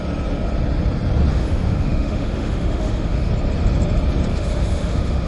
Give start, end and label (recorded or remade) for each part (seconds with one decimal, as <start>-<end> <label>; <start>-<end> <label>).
0.0-1.3 recorded; 1.3-3.3 remade; 3.3-4.3 recorded; 4.3-5.3 remade